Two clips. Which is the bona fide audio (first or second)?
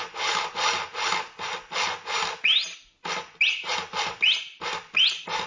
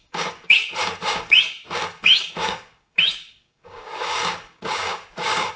first